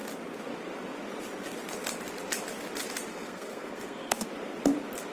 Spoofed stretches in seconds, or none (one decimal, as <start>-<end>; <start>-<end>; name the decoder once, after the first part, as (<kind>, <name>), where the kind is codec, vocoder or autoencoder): 3.1-4.3 (codec, SNAC)

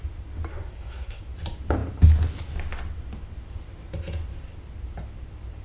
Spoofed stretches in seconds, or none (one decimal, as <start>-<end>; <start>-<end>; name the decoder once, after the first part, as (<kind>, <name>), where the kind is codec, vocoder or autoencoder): 0.5-1.2 (codec, SNAC)

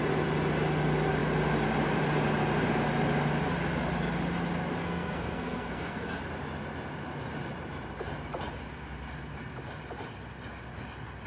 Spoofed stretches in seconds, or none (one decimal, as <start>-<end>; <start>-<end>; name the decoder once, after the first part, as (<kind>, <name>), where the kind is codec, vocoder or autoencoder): 4.8-6.2 (codec, SNAC)